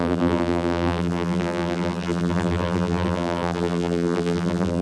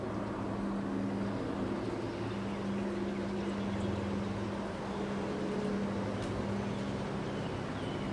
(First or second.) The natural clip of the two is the second